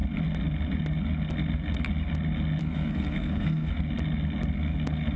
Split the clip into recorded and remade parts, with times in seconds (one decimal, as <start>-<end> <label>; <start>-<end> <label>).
0.0-2.6 recorded; 2.6-3.7 remade; 3.7-5.2 recorded